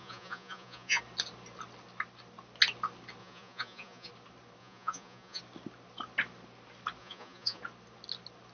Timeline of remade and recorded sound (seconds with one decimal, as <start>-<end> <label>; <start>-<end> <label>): 0.0-1.0 remade; 1.0-3.2 recorded; 3.2-4.1 remade; 4.1-4.6 recorded; 4.6-5.4 remade; 5.4-7.0 recorded; 7.0-7.6 remade; 7.6-8.5 recorded